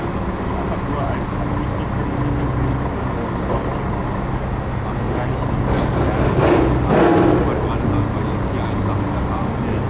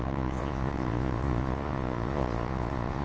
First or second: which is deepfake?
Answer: second